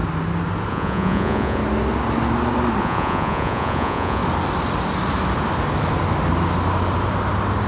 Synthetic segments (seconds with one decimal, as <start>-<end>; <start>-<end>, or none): 0.7-1.6; 2.8-4.2